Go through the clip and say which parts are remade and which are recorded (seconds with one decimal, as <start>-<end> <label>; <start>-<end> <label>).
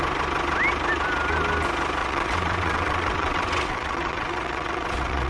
0.0-2.0 recorded; 2.0-5.3 remade